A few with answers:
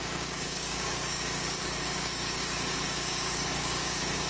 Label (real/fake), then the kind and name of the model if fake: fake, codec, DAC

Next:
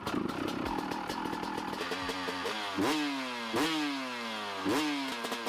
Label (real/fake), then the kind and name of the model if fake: real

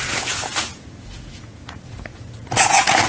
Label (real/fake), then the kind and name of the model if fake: fake, vocoder, Vocos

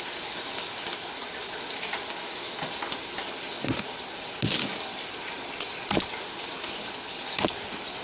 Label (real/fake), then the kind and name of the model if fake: real